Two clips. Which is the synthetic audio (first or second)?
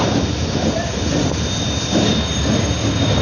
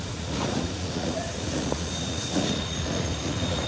second